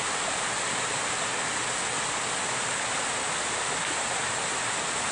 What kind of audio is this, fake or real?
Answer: real